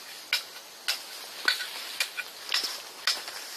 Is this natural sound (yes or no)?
yes